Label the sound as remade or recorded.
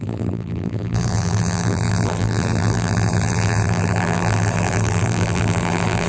remade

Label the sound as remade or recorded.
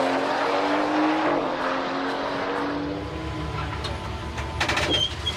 recorded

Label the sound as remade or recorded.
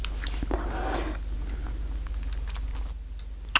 recorded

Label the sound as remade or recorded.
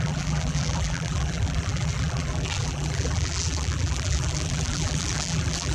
remade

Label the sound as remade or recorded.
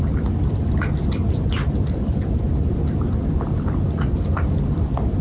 remade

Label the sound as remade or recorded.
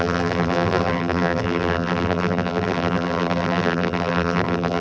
remade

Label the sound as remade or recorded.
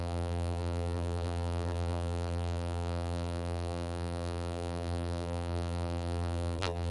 remade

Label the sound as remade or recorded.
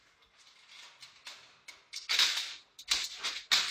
recorded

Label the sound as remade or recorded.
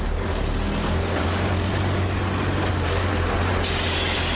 recorded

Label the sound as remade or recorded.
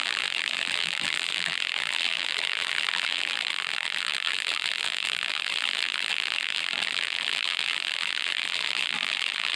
remade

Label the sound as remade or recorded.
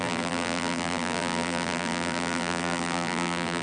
remade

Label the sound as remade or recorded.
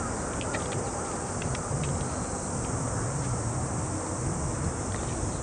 remade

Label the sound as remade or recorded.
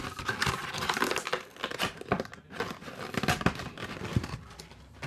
recorded